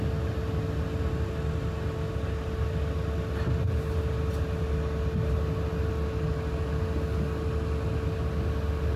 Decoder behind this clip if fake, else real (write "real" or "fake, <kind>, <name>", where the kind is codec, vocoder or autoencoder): real